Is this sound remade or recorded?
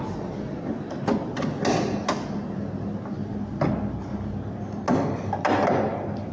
recorded